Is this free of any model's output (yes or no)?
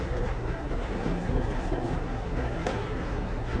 no